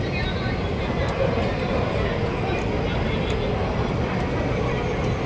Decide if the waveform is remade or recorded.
recorded